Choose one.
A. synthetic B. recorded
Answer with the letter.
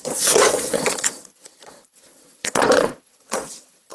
A